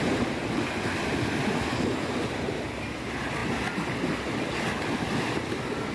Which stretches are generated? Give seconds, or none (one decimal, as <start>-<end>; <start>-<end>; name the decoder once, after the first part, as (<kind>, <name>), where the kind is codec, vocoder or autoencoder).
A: none